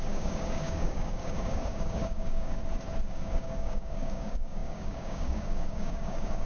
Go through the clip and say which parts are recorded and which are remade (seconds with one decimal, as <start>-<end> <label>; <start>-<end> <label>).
0.0-2.6 remade; 2.6-3.1 recorded; 3.1-6.5 remade